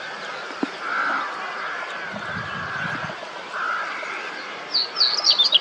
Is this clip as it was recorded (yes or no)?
yes